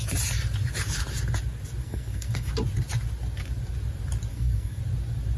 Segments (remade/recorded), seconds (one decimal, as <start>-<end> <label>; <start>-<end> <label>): 0.0-1.8 recorded; 1.8-2.5 remade; 2.5-4.3 recorded; 4.3-4.8 remade; 4.8-5.4 recorded